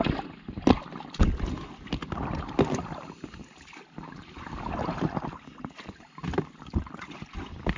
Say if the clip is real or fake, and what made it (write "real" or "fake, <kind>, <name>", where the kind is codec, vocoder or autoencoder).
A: real